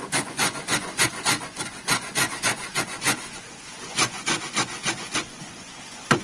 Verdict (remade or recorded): remade